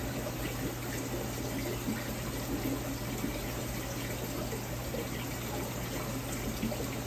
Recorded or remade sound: recorded